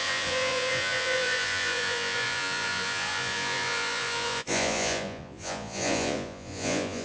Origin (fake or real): fake